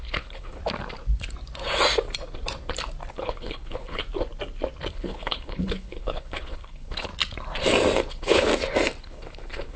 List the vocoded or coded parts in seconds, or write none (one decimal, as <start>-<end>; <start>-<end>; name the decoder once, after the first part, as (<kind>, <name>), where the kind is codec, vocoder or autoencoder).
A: 0.0-0.6 (codec, HILCodec); 3.1-4.0; 4.9-7.1; 8.1-8.5; 9.0-9.8